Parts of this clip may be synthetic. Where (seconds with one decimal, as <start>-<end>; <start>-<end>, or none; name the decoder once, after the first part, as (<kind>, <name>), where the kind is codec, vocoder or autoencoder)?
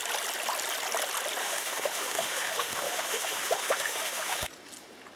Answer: 1.4-4.5 (autoencoder, DAC-VAE)